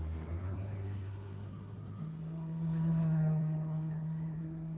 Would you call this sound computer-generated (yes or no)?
yes